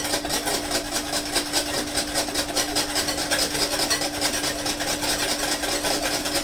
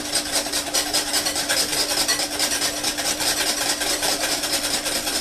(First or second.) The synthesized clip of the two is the second